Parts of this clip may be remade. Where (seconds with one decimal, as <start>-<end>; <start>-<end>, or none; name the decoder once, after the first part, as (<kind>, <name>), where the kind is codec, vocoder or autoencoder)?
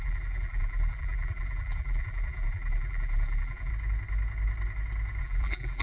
0.0-3.7 (vocoder, BigVGAN v2); 5.2-5.8